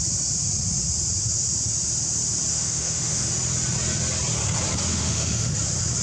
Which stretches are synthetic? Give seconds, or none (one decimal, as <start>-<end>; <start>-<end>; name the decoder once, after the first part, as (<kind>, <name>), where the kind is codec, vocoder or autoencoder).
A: 2.5-3.3 (autoencoder, DAC-VAE); 4.9-5.5